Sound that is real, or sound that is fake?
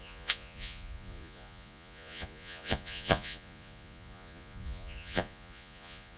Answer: fake